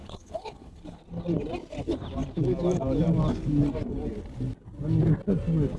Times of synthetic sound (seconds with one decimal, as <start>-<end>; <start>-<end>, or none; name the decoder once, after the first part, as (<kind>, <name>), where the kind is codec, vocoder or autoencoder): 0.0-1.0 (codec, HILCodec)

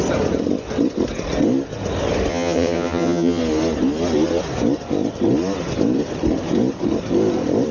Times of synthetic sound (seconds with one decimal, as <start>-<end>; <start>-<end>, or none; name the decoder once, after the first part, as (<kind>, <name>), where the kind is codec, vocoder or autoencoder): 2.3-3.4 (vocoder, HiFi-GAN)

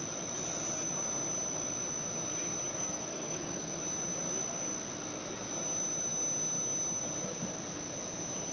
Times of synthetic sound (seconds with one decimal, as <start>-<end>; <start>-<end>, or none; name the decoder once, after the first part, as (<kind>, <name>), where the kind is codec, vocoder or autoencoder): 2.7-3.8 (codec, SNAC)

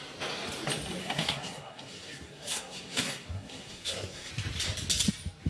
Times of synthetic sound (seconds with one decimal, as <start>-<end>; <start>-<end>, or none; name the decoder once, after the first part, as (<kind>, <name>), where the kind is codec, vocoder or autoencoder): 1.0-4.3 (codec, SNAC)

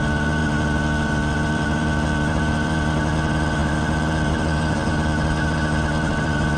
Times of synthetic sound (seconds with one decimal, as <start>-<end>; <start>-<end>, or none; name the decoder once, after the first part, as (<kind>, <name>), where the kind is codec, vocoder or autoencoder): 0.0-6.6 (vocoder, BigVGAN v2)